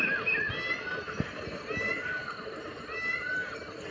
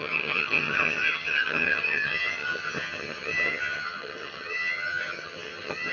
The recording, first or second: first